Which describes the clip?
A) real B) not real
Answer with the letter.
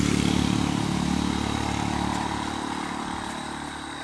A